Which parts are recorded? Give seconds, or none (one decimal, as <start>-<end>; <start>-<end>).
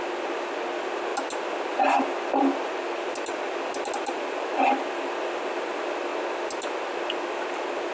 0.0-7.9